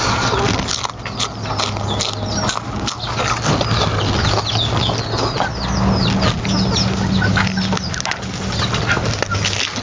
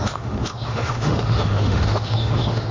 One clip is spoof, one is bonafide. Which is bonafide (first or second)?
first